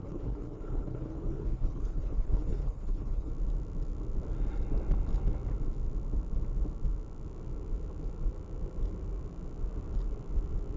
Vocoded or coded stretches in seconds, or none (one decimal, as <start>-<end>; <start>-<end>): 0.0-3.3